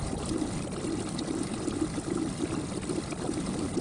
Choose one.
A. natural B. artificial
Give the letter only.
A